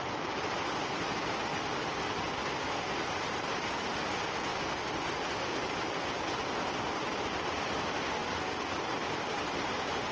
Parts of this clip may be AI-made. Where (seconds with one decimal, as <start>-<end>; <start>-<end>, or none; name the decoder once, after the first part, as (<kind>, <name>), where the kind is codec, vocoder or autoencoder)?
none